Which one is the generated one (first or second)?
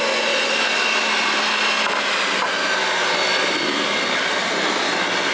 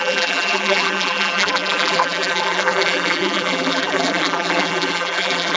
second